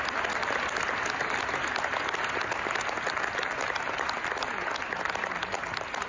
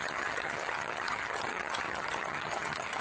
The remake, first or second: second